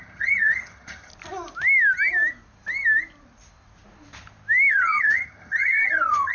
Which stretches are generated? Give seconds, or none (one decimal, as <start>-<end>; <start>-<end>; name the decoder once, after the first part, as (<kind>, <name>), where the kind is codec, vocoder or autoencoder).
0.0-1.1 (vocoder, HiFi-GAN); 4.7-6.3

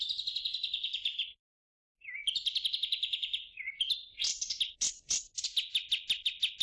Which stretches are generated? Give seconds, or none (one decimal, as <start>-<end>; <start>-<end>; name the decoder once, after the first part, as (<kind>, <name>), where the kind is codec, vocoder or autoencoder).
none

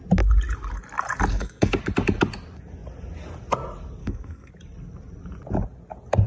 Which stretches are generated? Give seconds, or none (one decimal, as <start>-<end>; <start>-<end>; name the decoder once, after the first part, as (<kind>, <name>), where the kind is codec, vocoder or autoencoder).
1.3-1.8 (codec, SNAC); 4.0-4.5

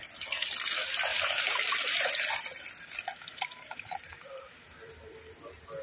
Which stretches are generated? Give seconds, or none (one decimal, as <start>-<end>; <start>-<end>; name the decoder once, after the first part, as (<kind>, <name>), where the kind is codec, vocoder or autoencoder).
1.1-2.1 (vocoder, BigVGAN v2); 3.1-4.7

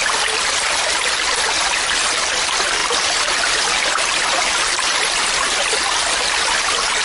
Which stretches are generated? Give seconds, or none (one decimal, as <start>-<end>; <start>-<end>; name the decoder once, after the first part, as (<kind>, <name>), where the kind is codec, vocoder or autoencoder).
none

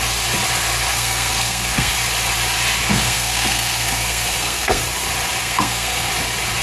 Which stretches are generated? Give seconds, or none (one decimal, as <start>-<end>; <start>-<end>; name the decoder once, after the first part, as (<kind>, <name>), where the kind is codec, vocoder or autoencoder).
0.9-1.9 (codec, SNAC); 2.9-4.8; 5.4-6.1

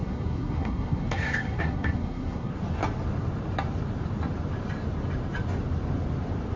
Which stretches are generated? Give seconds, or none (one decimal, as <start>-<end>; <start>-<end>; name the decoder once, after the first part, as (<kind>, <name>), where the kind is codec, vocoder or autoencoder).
0.0-2.5 (codec, SNAC)